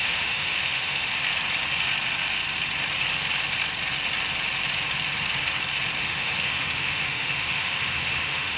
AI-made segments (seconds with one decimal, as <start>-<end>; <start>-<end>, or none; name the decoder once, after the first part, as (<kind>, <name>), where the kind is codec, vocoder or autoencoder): 0.0-1.1 (autoencoder, DAC-VAE); 6.0-8.6